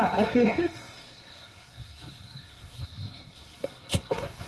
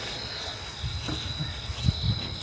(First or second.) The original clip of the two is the second